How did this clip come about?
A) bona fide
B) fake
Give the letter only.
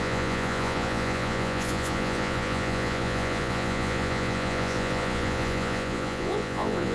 B